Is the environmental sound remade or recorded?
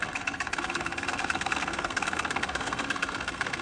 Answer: remade